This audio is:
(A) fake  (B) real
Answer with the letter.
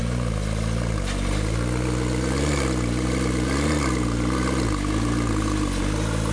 B